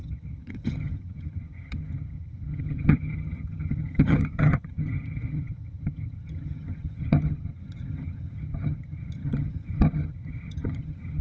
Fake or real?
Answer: fake